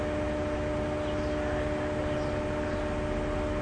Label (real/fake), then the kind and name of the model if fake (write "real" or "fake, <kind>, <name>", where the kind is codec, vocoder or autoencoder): real